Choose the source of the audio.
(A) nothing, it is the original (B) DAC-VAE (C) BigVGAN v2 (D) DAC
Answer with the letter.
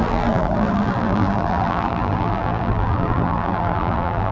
C